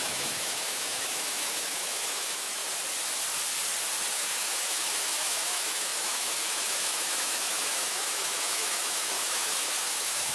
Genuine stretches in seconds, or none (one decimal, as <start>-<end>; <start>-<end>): 2.6-4.1